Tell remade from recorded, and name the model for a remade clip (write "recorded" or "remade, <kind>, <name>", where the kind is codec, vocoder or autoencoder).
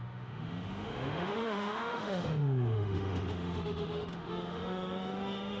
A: remade, autoencoder, DAC-VAE